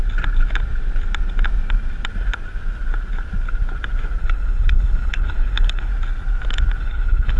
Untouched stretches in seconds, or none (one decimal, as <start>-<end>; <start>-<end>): 0.0-4.2; 5.9-6.8